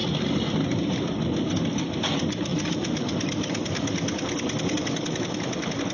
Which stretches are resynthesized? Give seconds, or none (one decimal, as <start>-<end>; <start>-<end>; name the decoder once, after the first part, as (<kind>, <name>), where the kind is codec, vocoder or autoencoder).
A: none